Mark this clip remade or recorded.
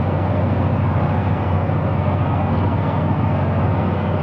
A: remade